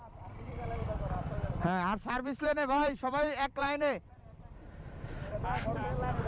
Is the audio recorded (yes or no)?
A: no